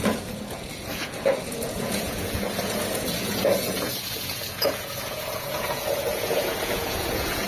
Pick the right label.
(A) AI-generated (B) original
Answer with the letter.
A